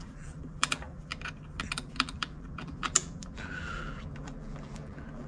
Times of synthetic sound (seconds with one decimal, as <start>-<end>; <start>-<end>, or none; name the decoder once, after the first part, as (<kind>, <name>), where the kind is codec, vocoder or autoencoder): 0.0-1.1 (vocoder, BigVGAN v2); 1.6-5.3